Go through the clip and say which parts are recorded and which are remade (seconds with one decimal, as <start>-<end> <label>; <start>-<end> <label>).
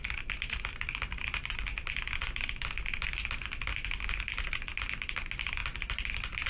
0.0-6.5 recorded